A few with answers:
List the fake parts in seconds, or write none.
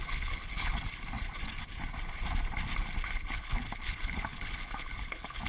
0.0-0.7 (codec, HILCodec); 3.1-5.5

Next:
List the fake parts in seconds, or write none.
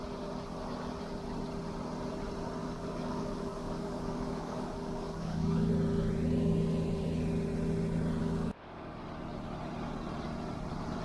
2.6-5.7 (codec, DAC); 8.2-9.0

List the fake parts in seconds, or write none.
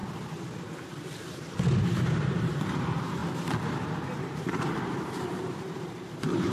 1.8-3.2 (vocoder, BigVGAN v2); 4.2-6.5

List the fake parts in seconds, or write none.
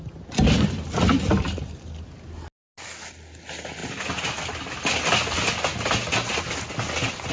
none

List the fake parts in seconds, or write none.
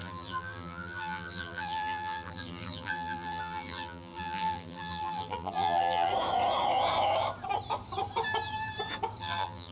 0.0-6.1 (vocoder, BigVGAN v2); 9.2-9.7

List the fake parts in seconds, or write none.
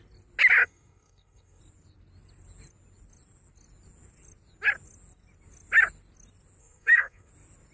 0.6-1.6 (codec, SNAC); 6.6-7.3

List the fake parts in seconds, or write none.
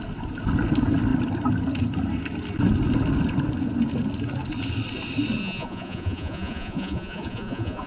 5.4-7.9 (vocoder, Vocos)